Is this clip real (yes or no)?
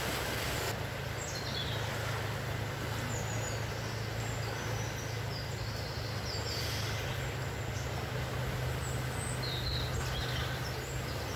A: yes